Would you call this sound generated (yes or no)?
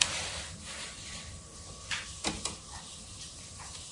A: no